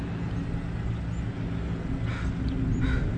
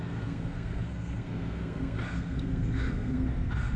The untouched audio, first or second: first